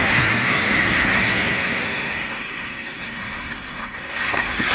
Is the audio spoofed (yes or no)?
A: yes